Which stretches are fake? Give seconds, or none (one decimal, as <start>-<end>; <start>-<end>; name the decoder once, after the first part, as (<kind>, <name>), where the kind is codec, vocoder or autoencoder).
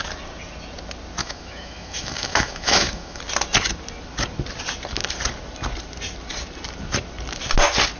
1.2-3.2 (autoencoder, DAC-VAE)